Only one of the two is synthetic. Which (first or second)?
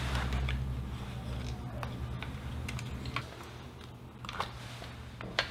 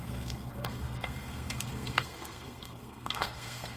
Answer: second